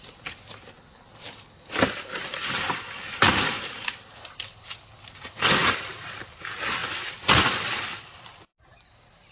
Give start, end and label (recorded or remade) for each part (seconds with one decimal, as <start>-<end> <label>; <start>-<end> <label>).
0.0-2.1 recorded; 2.1-2.8 remade; 2.8-5.6 recorded; 5.6-6.1 remade; 6.1-6.8 recorded; 6.8-8.2 remade; 8.2-9.3 recorded